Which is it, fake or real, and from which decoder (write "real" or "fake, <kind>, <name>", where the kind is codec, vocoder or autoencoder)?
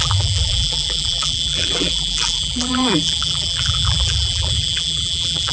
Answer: fake, vocoder, BigVGAN v2